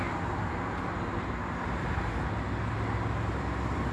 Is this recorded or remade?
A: recorded